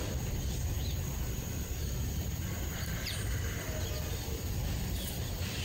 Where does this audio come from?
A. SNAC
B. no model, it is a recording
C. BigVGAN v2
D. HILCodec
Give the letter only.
C